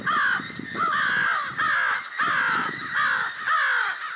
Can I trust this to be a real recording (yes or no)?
yes